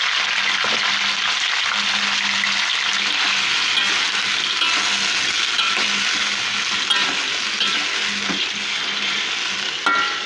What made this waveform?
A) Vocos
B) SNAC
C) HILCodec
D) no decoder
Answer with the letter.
D